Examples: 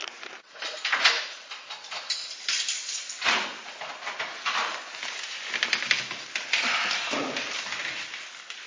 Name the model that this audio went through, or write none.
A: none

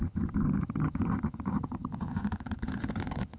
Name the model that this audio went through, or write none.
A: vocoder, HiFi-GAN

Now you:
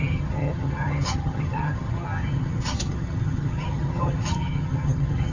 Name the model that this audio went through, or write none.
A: vocoder, HiFi-GAN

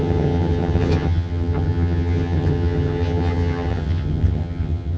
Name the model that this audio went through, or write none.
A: vocoder, HiFi-GAN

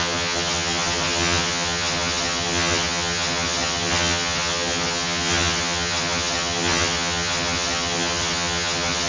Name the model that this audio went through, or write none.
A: vocoder, HiFi-GAN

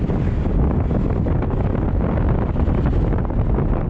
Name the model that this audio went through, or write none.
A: none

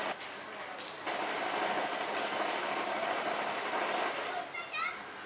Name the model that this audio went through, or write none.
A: none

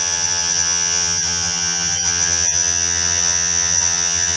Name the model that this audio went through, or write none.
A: vocoder, HiFi-GAN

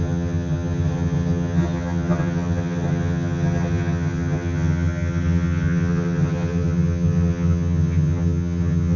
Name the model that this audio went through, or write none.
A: vocoder, HiFi-GAN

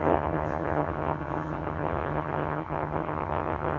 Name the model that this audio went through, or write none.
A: vocoder, HiFi-GAN